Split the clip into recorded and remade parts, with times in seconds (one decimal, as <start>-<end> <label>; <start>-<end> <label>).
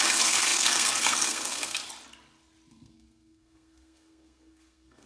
0.0-1.8 remade; 1.8-2.7 recorded; 2.7-5.1 remade